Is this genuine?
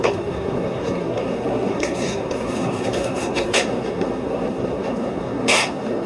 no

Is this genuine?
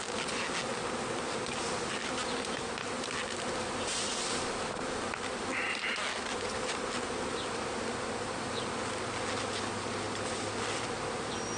yes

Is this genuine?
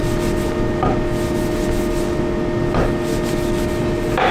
yes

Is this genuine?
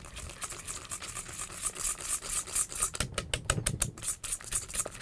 yes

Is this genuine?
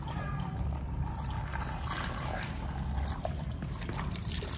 yes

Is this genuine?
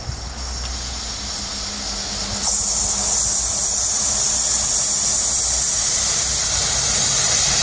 yes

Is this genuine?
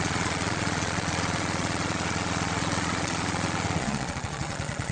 no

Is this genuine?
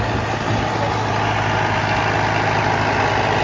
yes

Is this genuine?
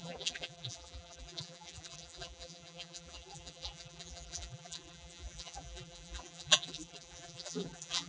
no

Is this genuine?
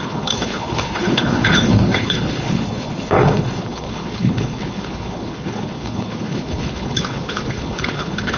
no